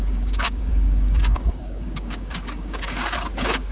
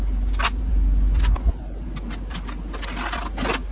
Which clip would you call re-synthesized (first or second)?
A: first